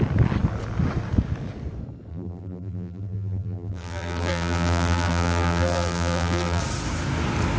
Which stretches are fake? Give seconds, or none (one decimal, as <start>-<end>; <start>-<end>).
2.1-6.6